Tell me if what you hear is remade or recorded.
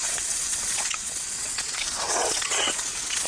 remade